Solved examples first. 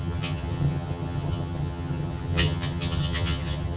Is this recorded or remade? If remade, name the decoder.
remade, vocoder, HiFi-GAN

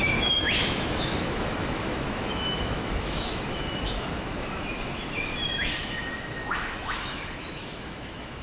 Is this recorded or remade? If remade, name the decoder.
remade, autoencoder, DAC-VAE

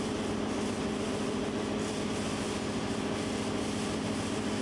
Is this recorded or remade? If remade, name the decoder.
recorded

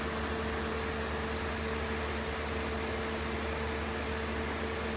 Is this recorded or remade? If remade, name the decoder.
recorded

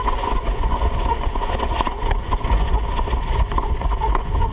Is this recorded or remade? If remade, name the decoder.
remade, vocoder, Vocos